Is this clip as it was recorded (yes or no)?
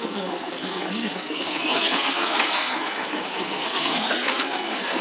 no